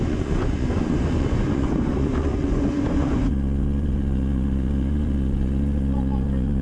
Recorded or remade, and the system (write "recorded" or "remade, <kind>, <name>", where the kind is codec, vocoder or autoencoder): remade, vocoder, Vocos